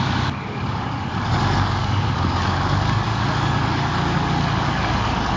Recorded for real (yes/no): no